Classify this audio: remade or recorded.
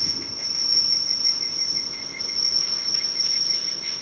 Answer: remade